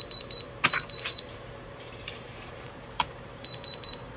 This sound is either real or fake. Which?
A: fake